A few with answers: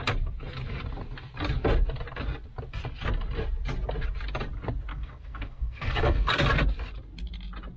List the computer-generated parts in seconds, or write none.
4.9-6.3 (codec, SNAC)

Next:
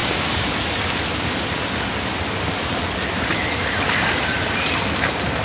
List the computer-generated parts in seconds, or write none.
none

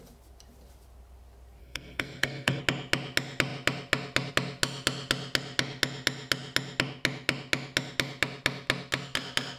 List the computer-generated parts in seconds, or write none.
1.6-2.6 (codec, SNAC)